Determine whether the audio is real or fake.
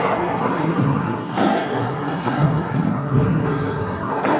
fake